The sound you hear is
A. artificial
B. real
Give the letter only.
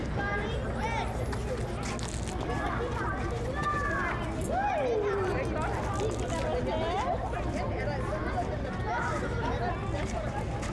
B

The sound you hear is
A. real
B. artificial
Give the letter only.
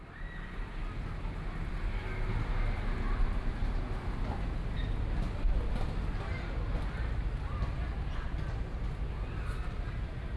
A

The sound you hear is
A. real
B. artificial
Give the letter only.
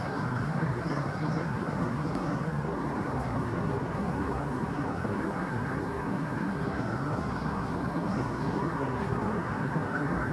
B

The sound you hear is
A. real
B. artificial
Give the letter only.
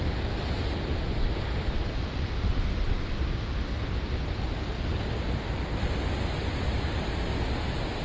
A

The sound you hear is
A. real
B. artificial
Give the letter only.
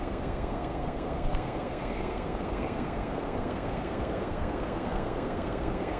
B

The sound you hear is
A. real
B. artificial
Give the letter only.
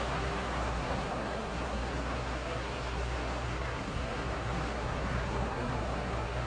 B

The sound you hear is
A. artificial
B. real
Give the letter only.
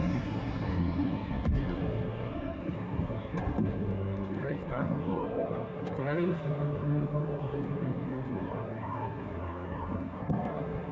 A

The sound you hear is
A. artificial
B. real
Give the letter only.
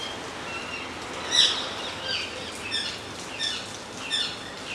B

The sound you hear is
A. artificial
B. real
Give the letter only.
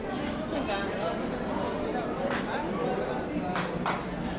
B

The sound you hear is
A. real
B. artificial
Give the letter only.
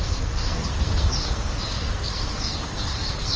B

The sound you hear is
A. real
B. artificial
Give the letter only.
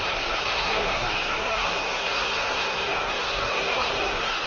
B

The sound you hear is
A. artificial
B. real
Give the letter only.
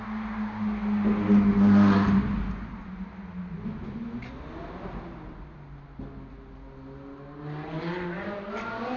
B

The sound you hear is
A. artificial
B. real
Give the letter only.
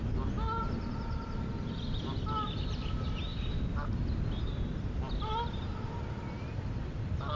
B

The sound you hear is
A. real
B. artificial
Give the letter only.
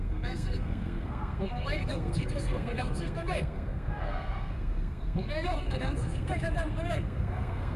B